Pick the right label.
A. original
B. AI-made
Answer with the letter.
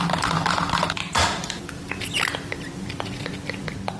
B